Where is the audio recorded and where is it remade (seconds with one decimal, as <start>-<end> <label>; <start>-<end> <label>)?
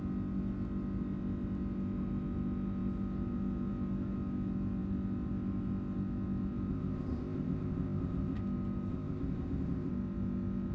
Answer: 0.0-6.7 recorded; 6.7-8.4 remade; 8.4-8.9 recorded; 8.9-9.9 remade; 9.9-10.7 recorded